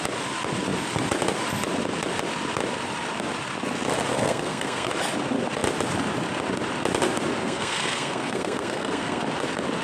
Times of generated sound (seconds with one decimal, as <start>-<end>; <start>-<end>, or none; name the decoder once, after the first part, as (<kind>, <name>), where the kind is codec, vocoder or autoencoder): 4.1-4.9 (codec, SNAC); 7.4-9.2